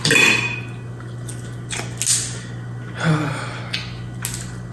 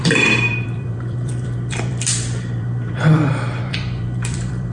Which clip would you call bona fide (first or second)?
first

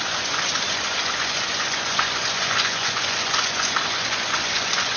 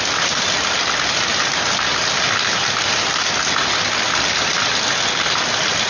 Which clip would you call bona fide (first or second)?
second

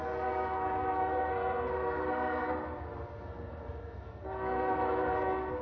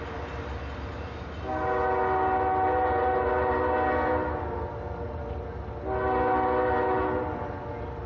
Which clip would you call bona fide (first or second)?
second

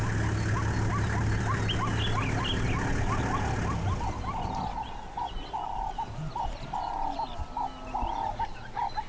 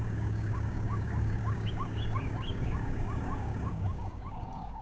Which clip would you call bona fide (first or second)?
first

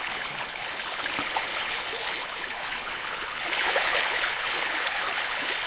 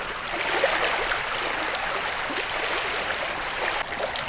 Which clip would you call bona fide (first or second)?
second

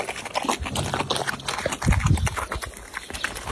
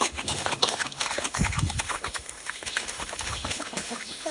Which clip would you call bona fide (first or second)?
first